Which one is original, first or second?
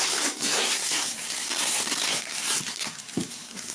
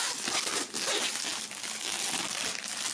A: second